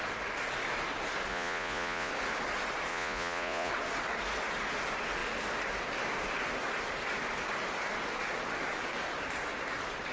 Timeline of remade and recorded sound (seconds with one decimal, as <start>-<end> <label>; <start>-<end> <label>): 0.0-1.3 recorded; 1.3-2.1 remade; 2.1-2.9 recorded; 2.9-3.7 remade; 3.7-10.1 recorded